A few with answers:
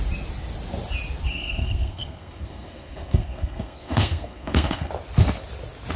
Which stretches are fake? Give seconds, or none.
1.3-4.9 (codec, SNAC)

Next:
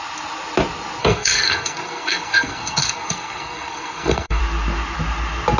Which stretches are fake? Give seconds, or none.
1.0-4.4 (codec, SNAC)

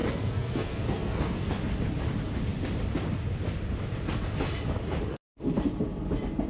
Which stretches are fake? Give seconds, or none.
0.0-1.5 (codec, SNAC); 5.1-5.7